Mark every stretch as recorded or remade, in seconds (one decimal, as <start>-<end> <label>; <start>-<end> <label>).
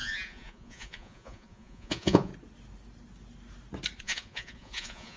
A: 0.0-2.3 remade; 2.3-4.0 recorded; 4.0-5.2 remade